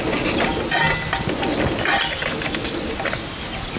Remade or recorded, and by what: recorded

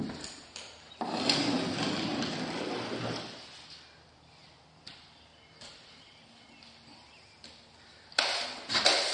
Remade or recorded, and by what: recorded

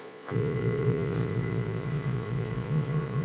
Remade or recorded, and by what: remade, vocoder, Vocos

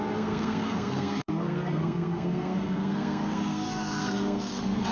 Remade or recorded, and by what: remade, codec, SNAC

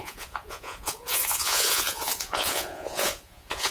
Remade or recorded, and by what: remade, vocoder, Vocos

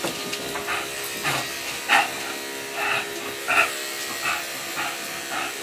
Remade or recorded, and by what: recorded